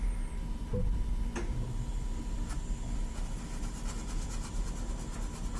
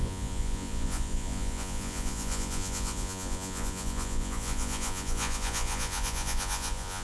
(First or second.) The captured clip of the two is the first